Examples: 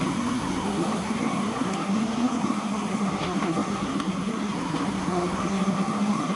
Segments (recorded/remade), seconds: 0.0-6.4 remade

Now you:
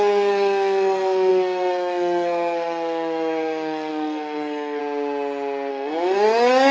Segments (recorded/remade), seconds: 0.0-4.8 remade; 4.8-5.7 recorded; 5.7-6.7 remade

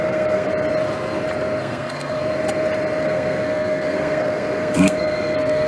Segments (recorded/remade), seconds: 0.0-0.5 remade; 0.5-1.6 recorded; 1.6-2.2 remade; 2.2-3.0 recorded; 3.0-5.7 remade

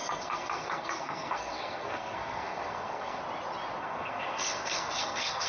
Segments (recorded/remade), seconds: 0.0-3.2 remade; 3.2-3.8 recorded; 3.8-5.5 remade